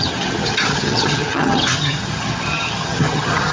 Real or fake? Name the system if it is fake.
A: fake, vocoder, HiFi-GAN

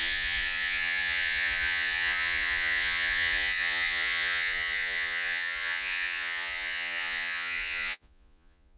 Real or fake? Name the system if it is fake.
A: fake, vocoder, Vocos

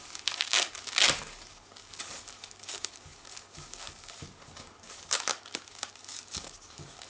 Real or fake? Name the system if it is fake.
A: fake, codec, DAC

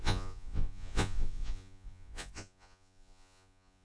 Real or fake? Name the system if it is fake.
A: fake, vocoder, Vocos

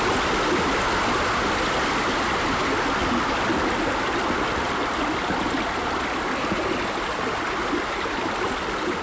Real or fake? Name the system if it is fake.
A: real